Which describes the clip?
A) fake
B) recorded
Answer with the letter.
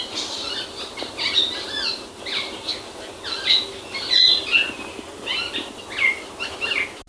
B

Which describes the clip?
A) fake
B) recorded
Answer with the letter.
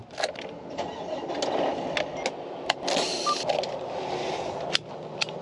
B